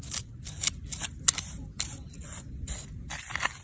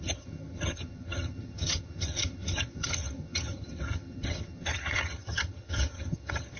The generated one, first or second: second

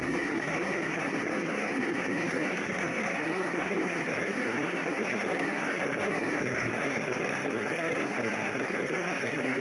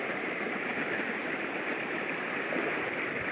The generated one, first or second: first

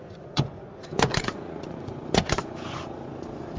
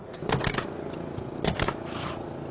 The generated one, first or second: first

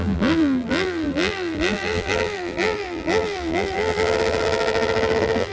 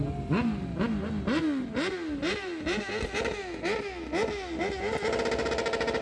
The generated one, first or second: first